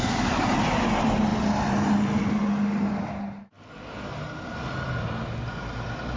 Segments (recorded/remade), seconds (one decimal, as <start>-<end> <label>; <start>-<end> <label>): 0.0-6.2 recorded